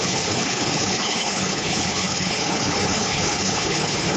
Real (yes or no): no